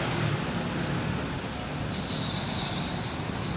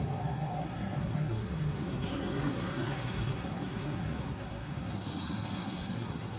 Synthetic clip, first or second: second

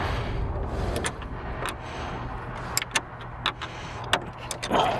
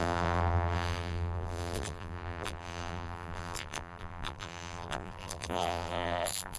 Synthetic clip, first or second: second